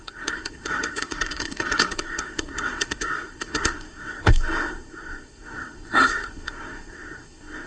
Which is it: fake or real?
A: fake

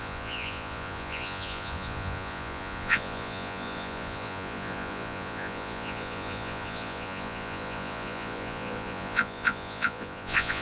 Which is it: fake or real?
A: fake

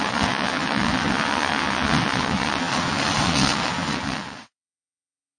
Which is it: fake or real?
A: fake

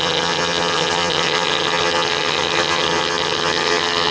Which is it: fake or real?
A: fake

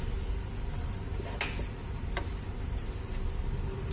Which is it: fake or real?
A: real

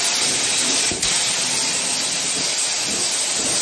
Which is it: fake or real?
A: real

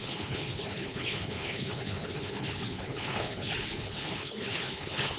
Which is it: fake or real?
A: fake